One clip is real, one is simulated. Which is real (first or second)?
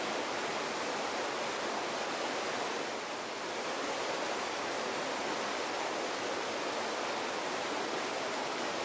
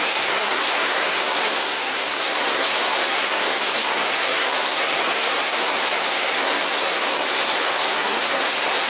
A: first